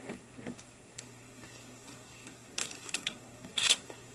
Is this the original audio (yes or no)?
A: no